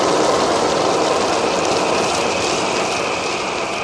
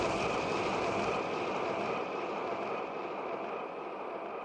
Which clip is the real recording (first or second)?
first